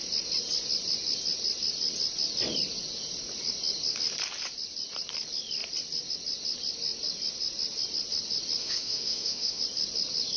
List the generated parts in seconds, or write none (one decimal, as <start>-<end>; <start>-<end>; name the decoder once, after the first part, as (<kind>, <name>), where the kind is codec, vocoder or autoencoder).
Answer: 8.6-9.6 (autoencoder, DAC-VAE)